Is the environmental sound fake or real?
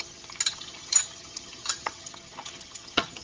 fake